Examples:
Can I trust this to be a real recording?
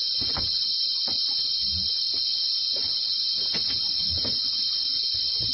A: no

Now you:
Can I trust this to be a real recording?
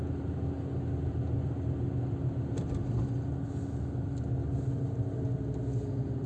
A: yes